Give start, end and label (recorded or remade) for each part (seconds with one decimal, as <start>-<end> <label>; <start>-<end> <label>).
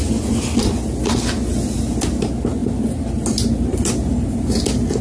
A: 0.0-5.0 recorded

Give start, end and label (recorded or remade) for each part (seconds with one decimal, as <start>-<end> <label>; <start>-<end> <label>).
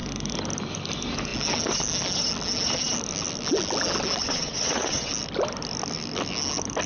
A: 0.0-4.2 recorded; 4.2-5.1 remade; 5.1-6.9 recorded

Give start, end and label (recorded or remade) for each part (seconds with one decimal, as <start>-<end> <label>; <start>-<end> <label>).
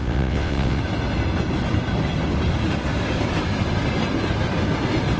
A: 0.0-0.8 remade; 0.8-5.2 recorded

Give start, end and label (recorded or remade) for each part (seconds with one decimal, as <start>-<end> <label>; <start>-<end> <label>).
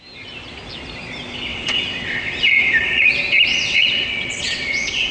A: 0.0-1.5 recorded; 1.5-3.1 remade; 3.1-3.5 recorded; 3.5-5.1 remade